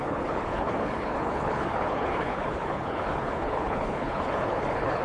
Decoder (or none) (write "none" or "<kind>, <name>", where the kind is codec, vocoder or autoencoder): codec, HILCodec